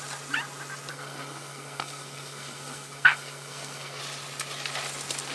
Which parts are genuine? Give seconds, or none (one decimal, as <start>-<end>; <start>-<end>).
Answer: 0.0-0.9; 4.0-5.3

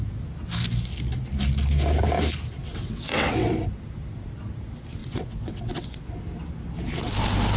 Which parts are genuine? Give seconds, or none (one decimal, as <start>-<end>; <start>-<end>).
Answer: 0.0-2.6; 3.5-5.0; 6.2-7.6